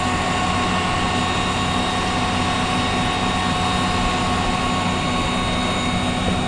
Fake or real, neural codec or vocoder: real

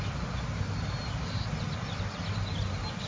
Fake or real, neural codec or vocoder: real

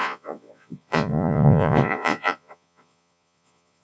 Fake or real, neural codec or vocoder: fake, vocoder, Vocos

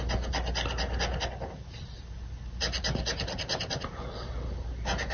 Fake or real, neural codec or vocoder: real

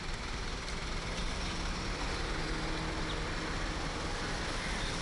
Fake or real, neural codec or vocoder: real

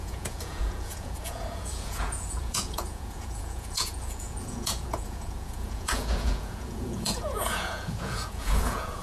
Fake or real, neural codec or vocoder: fake, vocoder, Vocos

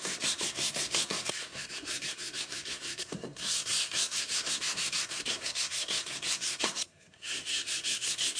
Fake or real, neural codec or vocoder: fake, codec, SNAC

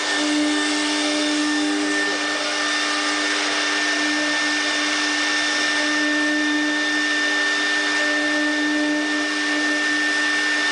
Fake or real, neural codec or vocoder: real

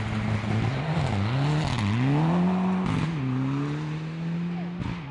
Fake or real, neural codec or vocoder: real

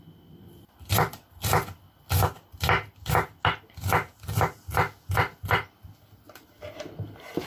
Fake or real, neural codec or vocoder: real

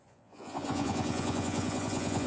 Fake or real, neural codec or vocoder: fake, vocoder, Vocos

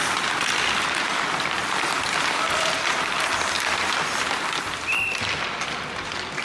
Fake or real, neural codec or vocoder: real